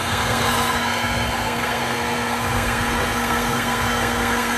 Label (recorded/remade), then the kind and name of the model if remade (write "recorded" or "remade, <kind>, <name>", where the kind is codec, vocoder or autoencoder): remade, codec, SNAC